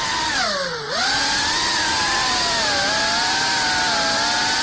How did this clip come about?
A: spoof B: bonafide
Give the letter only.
B